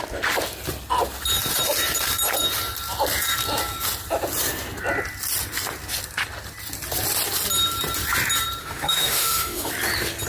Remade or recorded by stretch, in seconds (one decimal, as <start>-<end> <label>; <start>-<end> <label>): 0.0-8.6 recorded; 8.6-9.7 remade; 9.7-10.3 recorded